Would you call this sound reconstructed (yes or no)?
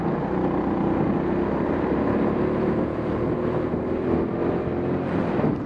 no